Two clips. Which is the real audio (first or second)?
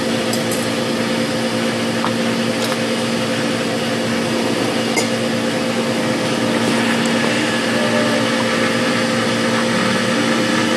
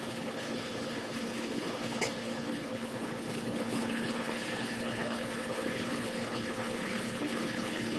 first